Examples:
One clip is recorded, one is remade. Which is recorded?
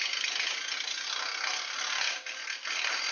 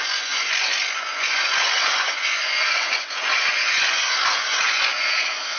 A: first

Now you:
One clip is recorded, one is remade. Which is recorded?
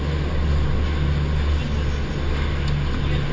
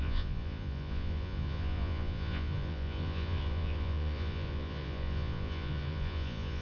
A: first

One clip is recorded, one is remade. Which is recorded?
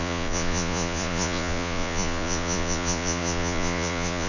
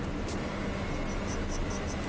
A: second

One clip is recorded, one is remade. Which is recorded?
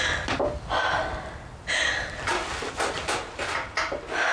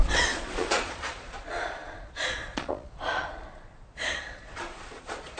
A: first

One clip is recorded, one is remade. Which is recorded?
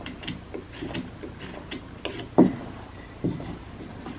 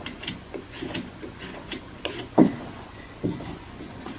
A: first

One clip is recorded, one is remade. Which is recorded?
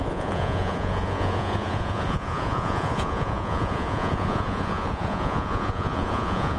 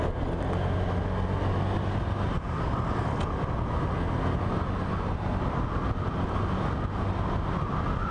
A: second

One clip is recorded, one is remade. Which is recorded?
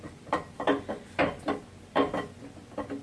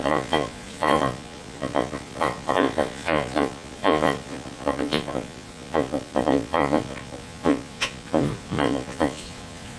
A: first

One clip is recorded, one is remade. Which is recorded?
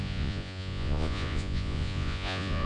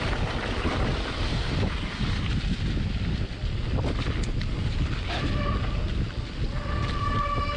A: second